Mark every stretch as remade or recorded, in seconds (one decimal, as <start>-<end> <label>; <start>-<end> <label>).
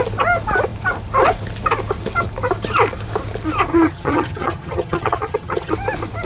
0.0-3.7 recorded; 3.7-5.7 remade; 5.7-6.3 recorded